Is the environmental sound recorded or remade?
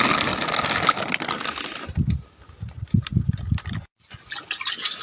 recorded